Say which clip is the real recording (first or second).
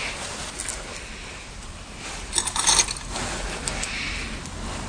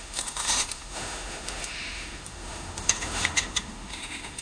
first